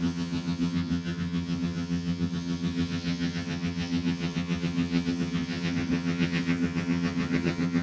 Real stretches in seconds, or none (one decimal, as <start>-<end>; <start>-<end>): none